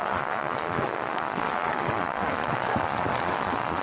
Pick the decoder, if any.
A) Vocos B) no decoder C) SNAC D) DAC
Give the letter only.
A